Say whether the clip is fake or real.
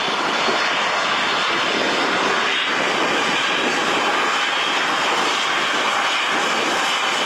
real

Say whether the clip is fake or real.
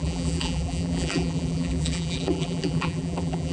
fake